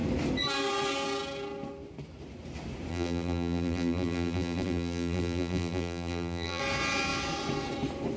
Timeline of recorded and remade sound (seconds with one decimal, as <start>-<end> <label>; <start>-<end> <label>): 0.0-2.9 recorded; 2.9-6.6 remade; 6.6-8.2 recorded